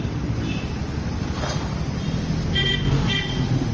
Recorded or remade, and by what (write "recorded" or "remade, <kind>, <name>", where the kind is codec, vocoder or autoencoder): recorded